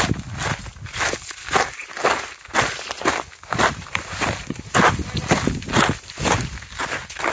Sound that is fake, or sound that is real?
real